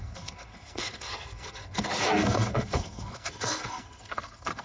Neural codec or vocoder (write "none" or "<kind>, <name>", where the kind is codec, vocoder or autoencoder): codec, SNAC